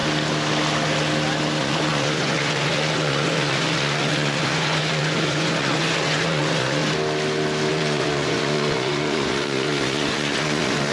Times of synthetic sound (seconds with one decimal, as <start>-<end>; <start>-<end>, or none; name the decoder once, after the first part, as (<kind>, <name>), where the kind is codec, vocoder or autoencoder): 1.6-6.8 (vocoder, Vocos); 7.7-10.9